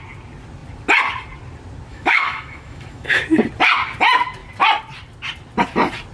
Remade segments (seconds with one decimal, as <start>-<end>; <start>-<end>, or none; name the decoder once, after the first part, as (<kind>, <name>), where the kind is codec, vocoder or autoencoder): 1.9-3.2 (autoencoder, DAC-VAE)